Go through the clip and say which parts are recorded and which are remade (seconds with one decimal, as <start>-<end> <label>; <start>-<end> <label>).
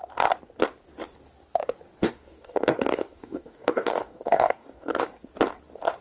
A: 0.0-2.0 recorded; 2.0-5.0 remade; 5.0-6.0 recorded